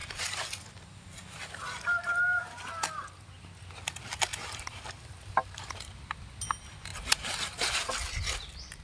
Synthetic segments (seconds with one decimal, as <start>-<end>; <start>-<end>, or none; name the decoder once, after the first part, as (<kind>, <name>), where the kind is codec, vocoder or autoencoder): 6.9-7.9 (vocoder, BigVGAN v2)